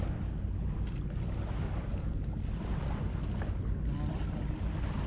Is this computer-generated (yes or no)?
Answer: no